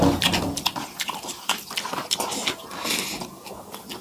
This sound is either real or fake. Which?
real